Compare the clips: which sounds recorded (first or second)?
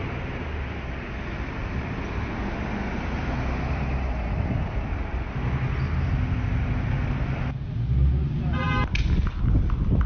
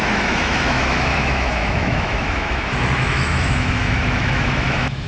first